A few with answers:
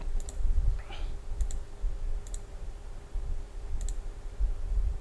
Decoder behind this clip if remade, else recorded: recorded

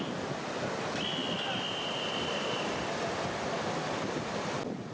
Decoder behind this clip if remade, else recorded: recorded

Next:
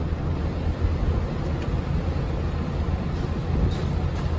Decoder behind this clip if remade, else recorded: recorded